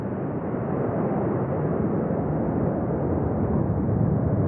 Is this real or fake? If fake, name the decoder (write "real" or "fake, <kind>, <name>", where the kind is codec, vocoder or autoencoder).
real